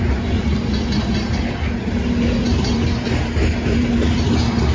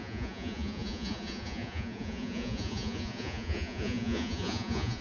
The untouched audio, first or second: first